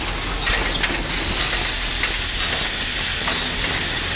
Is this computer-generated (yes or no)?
no